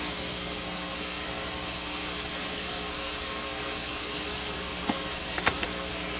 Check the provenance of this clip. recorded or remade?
remade